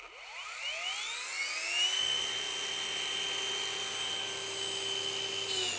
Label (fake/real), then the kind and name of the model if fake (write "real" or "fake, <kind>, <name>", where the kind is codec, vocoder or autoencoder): real